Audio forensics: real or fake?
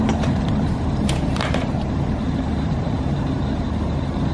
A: fake